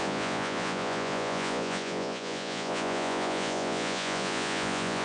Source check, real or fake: fake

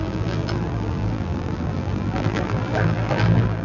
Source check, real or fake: fake